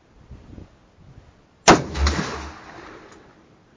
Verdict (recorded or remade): recorded